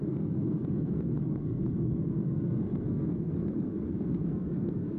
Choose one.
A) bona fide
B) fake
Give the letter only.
B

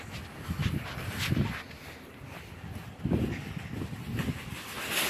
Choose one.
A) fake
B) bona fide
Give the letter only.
B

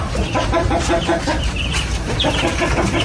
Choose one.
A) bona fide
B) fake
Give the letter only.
B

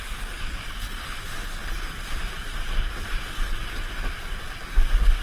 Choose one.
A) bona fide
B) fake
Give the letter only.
A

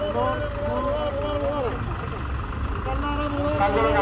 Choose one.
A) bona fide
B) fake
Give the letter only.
A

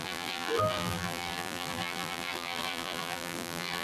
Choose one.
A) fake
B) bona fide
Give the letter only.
A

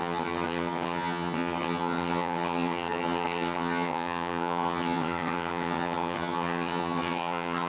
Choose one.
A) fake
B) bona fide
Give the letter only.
A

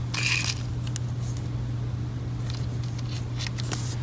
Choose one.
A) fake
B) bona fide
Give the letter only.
B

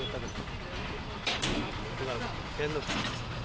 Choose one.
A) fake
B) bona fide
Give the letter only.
B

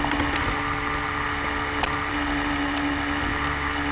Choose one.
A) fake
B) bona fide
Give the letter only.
B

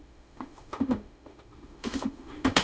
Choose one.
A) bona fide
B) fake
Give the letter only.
B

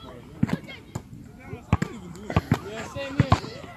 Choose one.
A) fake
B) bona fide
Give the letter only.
B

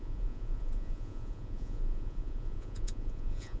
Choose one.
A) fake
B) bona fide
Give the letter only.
A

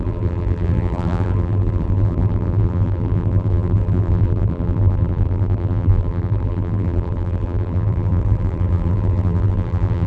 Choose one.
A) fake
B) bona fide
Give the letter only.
A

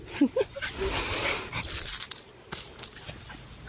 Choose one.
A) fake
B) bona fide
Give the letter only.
B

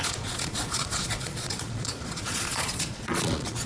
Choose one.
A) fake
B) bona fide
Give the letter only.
A